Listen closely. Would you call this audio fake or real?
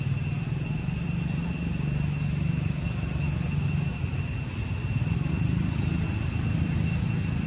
real